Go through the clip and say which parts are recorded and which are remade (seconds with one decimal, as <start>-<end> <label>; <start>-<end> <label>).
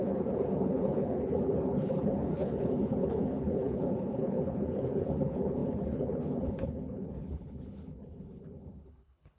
0.0-9.4 remade